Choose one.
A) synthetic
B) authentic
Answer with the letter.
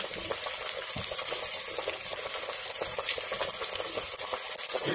B